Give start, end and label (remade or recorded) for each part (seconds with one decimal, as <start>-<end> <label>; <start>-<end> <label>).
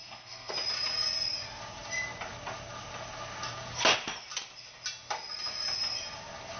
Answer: 0.0-0.5 remade; 0.5-6.6 recorded